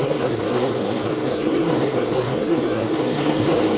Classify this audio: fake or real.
fake